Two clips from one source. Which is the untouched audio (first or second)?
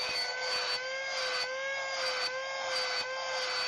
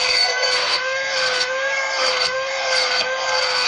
first